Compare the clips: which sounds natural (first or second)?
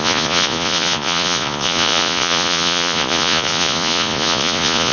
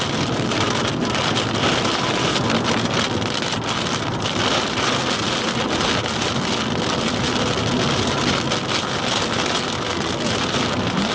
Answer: second